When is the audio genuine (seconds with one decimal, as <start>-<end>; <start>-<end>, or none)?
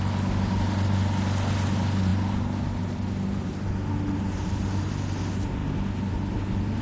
0.0-6.8